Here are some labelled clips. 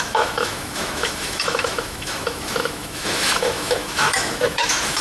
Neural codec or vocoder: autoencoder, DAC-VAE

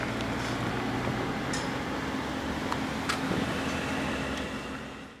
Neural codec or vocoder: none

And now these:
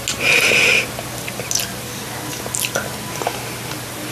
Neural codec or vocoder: none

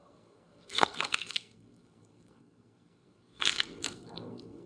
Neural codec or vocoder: codec, SNAC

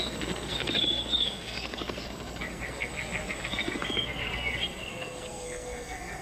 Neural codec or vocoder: codec, SNAC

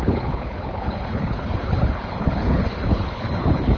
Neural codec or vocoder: codec, HILCodec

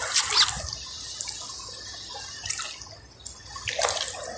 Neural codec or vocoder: none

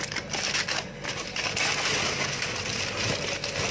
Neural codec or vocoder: none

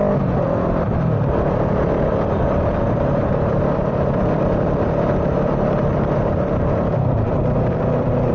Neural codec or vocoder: vocoder, BigVGAN v2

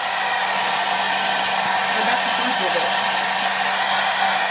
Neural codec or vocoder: none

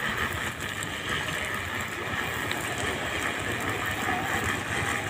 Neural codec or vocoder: none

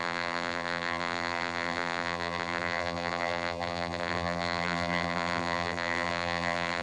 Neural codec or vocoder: vocoder, BigVGAN v2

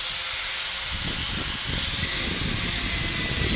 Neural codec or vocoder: none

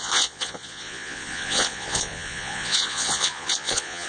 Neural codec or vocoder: vocoder, Vocos